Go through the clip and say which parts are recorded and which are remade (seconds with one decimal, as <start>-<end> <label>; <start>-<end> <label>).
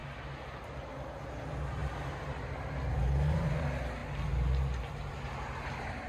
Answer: 0.0-6.1 recorded